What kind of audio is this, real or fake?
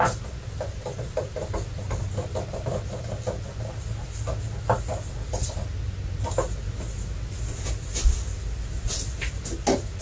real